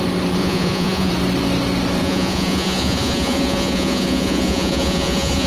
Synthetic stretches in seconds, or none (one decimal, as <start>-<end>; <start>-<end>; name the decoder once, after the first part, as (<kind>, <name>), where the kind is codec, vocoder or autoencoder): 0.4-1.1 (vocoder, Vocos); 2.0-5.5